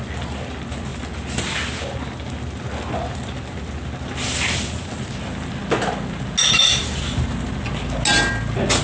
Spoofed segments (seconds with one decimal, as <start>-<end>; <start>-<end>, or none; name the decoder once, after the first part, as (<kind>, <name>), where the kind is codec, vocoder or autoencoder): none